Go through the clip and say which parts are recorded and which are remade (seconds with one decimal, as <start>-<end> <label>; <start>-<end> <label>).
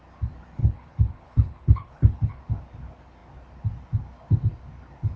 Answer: 0.0-0.6 recorded; 0.6-2.4 remade; 2.4-5.2 recorded